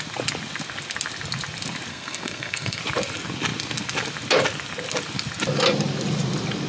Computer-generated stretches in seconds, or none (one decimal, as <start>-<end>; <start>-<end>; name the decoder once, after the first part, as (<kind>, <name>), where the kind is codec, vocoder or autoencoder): 1.9-2.8 (codec, SNAC)

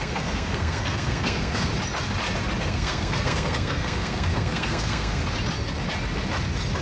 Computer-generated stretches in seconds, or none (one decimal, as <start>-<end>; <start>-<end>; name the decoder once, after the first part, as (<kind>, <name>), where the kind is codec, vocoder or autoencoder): 0.0-1.7 (codec, SNAC); 2.6-5.2

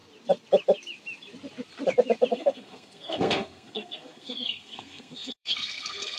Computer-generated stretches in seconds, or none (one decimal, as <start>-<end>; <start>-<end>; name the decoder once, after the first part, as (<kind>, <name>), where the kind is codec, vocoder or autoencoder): 2.3-6.2 (codec, SNAC)

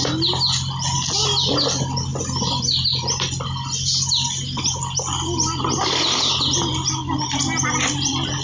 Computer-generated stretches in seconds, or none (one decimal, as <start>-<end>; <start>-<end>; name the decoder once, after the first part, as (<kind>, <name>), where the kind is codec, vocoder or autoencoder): none

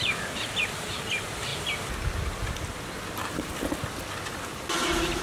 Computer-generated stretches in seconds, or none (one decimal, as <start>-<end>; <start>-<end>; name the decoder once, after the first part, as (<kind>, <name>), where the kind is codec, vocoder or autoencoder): none